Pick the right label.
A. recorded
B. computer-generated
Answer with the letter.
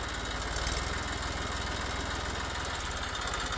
A